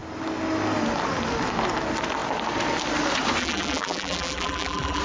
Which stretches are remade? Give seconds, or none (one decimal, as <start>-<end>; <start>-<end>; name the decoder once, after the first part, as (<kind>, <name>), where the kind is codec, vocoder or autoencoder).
3.4-5.0 (vocoder, BigVGAN v2)